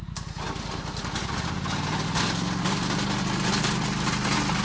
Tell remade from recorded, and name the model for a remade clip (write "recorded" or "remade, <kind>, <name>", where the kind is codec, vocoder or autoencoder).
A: recorded